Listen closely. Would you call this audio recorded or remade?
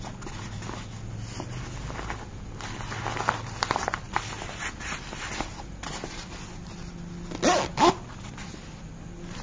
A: recorded